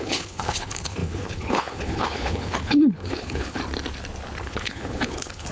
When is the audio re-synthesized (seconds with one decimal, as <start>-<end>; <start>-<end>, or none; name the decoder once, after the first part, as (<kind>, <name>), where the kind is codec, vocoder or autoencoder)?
0.0-3.6 (codec, HILCodec); 4.4-5.5